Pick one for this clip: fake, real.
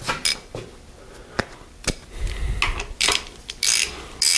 real